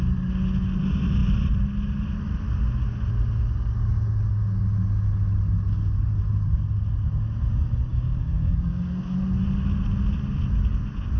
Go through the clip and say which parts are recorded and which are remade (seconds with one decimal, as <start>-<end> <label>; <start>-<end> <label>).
0.0-7.9 recorded; 7.9-8.8 remade; 8.8-11.2 recorded